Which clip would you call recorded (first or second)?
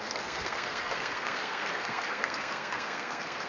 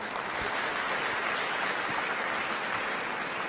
second